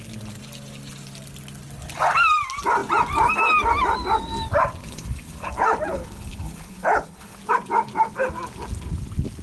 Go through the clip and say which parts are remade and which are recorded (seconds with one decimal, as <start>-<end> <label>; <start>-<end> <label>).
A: 0.0-4.8 recorded; 4.8-5.5 remade; 5.5-5.9 recorded; 5.9-7.4 remade; 7.4-9.4 recorded